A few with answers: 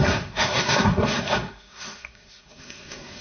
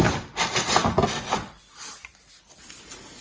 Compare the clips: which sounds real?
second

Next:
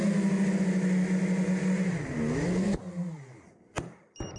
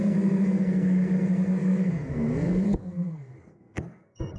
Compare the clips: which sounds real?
first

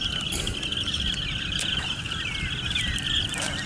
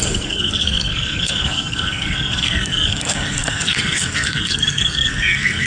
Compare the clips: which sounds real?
first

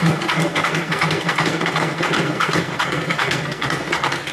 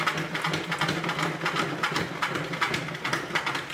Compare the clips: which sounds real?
second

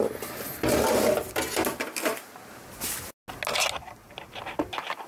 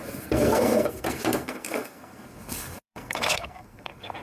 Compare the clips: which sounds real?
first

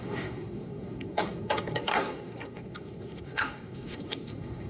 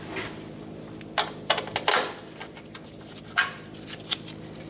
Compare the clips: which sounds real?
second